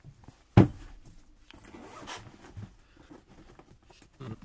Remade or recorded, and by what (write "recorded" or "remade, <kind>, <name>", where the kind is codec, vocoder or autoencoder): recorded